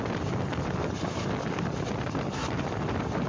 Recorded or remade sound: recorded